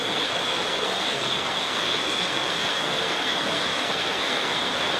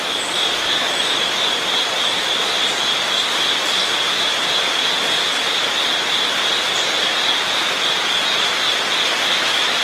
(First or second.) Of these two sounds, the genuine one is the second